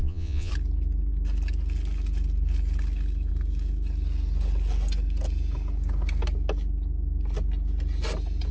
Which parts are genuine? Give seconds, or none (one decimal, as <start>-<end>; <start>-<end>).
0.5-8.5